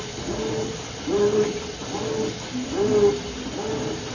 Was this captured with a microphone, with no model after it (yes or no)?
yes